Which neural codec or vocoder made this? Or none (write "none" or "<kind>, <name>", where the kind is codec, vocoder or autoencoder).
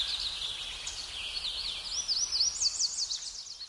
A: none